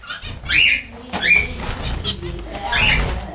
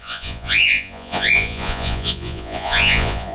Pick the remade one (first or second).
second